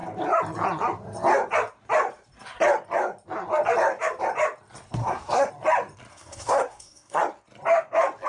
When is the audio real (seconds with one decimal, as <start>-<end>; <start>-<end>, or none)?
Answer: 0.0-5.0; 5.5-6.1; 7.2-8.3